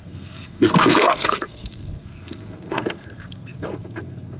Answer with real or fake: fake